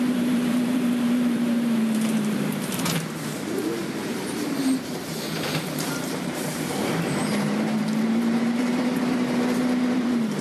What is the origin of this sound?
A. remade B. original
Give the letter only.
A